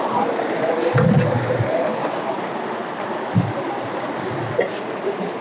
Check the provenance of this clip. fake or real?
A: real